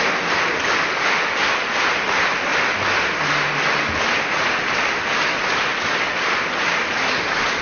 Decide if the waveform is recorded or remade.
recorded